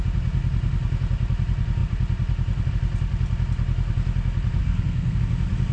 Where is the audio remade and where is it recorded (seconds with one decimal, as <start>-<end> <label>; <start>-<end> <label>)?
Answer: 0.0-4.6 recorded; 4.6-5.2 remade; 5.2-5.7 recorded